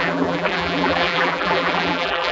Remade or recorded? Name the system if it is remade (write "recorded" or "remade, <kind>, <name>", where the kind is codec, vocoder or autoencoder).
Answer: remade, vocoder, BigVGAN v2